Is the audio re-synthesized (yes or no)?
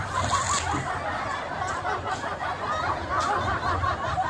no